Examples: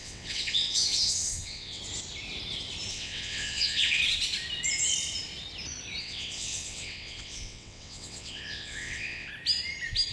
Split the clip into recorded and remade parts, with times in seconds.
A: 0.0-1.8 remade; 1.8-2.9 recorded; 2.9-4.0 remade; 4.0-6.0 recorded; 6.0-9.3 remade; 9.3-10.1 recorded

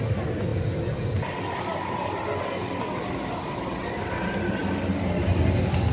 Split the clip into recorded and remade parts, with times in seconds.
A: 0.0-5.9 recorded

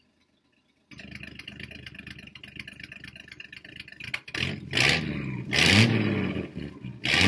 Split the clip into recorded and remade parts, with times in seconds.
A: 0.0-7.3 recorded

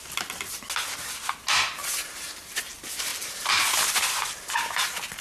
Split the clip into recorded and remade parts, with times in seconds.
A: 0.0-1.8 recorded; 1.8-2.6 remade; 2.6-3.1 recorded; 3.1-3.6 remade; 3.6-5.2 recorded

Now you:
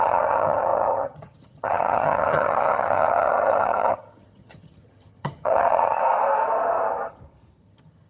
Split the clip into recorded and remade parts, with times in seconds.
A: 0.0-6.0 remade; 6.0-7.6 recorded; 7.6-8.1 remade